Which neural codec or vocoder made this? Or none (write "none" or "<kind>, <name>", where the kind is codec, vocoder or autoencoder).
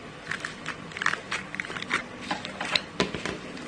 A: vocoder, BigVGAN v2